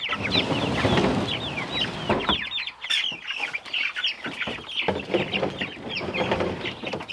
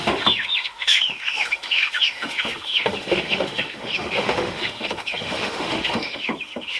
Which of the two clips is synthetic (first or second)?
second